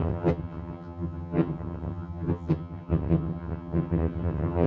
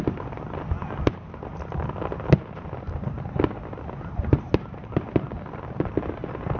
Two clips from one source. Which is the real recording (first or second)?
second